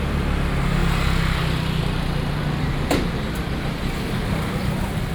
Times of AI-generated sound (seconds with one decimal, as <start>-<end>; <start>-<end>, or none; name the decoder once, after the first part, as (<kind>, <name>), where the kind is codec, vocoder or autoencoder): none